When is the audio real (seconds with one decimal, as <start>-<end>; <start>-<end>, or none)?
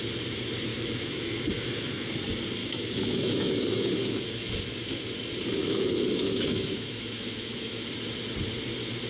0.0-0.7; 2.1-2.6; 4.6-5.6; 7.9-9.1